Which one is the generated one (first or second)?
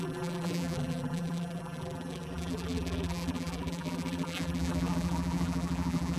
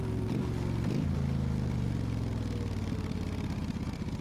first